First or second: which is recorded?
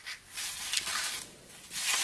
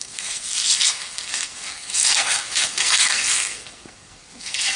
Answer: first